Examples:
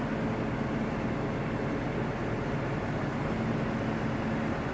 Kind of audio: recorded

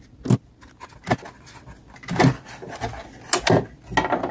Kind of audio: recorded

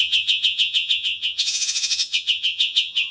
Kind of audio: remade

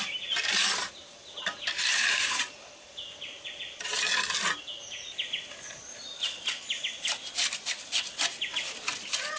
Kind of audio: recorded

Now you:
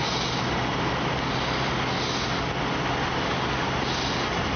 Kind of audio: recorded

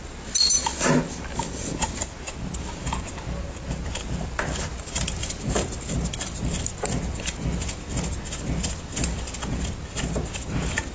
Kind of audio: recorded